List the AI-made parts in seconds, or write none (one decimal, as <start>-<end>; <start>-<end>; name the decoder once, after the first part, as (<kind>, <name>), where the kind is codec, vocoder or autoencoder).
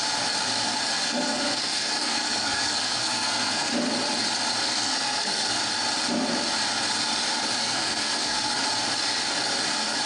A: 0.9-3.7 (codec, SNAC); 4.6-5.6; 7.6-8.6